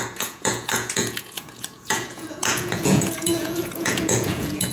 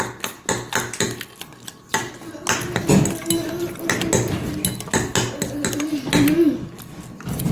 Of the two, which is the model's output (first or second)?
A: first